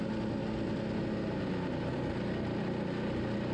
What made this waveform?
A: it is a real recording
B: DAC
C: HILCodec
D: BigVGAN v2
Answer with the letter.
A